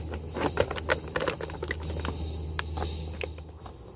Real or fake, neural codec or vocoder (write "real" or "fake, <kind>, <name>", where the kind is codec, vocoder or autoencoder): real